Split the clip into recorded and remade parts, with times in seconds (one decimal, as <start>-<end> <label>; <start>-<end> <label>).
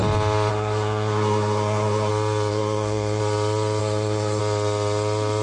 0.0-0.5 recorded; 0.5-2.1 remade; 2.1-2.5 recorded; 2.5-3.2 remade; 3.2-3.8 recorded; 3.8-4.4 remade; 4.4-5.4 recorded